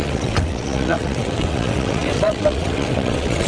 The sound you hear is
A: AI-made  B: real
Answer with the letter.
A